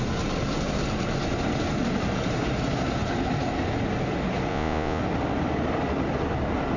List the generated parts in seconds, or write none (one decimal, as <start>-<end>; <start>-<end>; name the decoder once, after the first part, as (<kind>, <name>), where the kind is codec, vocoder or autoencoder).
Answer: 4.5-5.0 (vocoder, Vocos)